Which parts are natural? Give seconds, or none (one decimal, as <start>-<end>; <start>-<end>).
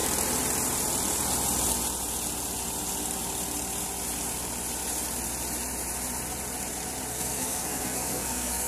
0.0-7.1